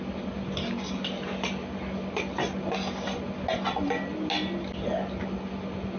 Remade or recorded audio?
recorded